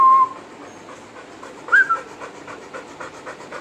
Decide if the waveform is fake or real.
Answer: real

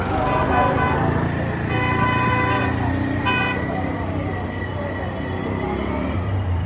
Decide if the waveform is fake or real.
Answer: real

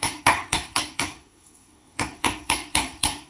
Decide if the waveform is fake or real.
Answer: fake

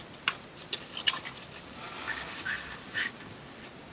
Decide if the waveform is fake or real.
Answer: real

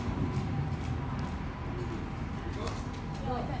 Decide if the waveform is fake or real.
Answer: real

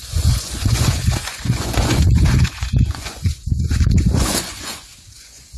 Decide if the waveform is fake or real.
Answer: fake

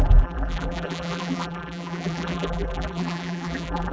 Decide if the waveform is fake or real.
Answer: fake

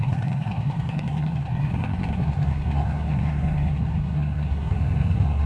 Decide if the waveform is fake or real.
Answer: fake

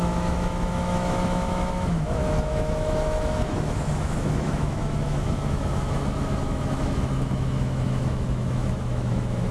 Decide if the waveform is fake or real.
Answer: fake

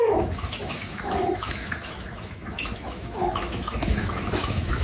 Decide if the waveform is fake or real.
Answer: fake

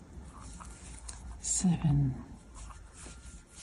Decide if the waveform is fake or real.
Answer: fake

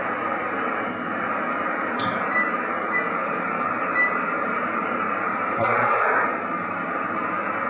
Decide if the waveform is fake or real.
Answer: fake